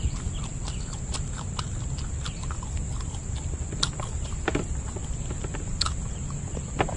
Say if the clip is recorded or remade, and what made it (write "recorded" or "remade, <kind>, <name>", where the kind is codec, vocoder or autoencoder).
recorded